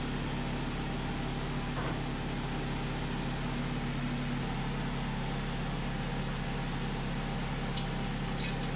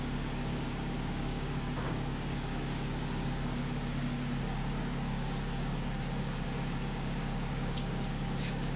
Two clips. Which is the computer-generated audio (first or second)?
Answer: second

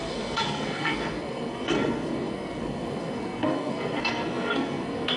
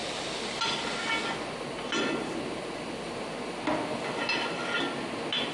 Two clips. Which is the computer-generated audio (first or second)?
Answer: first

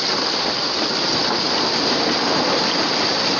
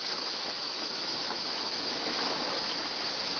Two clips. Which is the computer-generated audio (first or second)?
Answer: second